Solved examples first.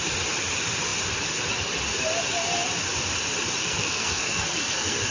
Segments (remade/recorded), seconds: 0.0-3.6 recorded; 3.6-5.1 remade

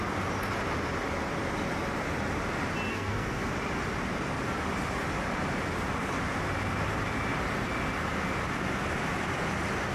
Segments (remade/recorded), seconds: 0.0-2.9 recorded; 2.9-3.5 remade; 3.5-9.9 recorded